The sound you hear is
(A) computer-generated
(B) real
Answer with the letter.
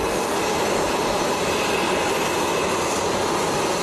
B